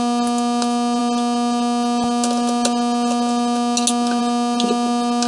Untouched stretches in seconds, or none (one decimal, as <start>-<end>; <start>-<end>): 0.0-5.3

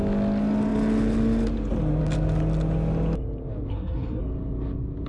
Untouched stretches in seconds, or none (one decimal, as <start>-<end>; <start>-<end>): 0.0-3.7; 4.2-5.1

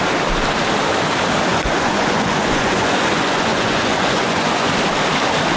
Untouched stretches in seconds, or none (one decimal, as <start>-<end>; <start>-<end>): 0.0-1.5; 4.7-5.6

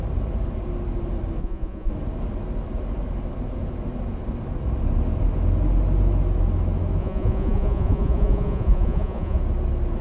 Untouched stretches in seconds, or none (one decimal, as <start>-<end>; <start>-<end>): 0.0-1.4; 1.9-7.0; 9.4-10.0

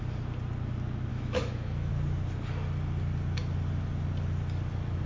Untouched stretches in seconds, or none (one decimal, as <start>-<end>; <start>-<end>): 0.0-1.1; 1.9-5.1

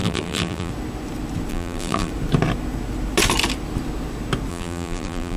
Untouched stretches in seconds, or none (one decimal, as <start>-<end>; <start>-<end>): 0.7-1.5; 2.1-4.5

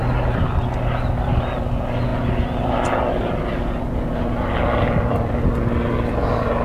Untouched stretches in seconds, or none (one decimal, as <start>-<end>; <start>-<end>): 0.0-6.6